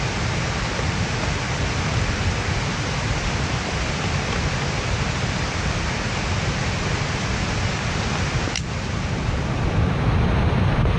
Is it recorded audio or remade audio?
remade